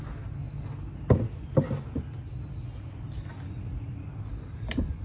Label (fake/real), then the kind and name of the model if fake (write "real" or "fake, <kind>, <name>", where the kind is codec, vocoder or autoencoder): real